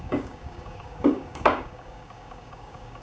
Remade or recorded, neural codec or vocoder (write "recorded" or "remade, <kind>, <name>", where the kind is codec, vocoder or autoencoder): remade, codec, DAC